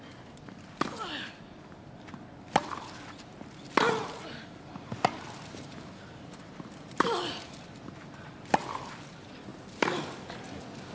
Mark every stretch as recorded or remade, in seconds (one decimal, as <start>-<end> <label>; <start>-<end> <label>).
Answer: 0.0-10.9 recorded